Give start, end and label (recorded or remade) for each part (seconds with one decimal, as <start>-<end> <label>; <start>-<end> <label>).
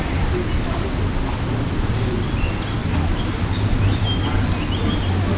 0.0-5.4 recorded